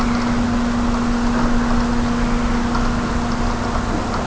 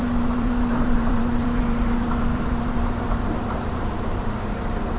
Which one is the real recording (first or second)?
first